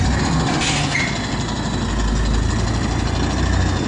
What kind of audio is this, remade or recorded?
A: recorded